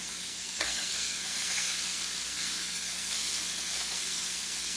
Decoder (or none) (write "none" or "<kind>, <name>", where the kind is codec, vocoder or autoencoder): codec, SNAC